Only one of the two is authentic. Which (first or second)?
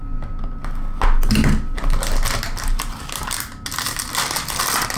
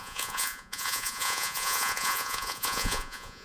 first